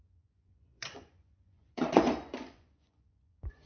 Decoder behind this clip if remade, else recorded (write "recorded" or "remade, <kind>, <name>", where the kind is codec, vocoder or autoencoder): remade, vocoder, Vocos